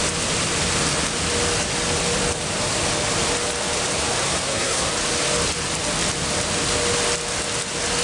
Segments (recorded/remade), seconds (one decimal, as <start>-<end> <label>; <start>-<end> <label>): 0.0-4.2 recorded; 4.2-4.9 remade; 4.9-8.0 recorded